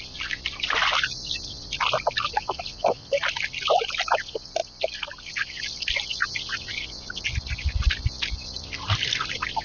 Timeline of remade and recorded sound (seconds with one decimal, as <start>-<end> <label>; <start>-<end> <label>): 0.0-9.6 recorded